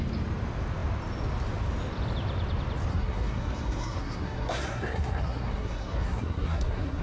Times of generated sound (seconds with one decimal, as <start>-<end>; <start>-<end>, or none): 2.9-7.0

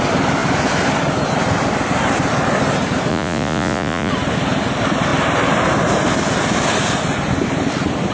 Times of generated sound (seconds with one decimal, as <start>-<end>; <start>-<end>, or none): 3.1-4.1